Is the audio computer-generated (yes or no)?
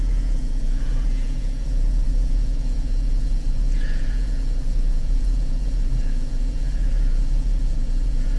yes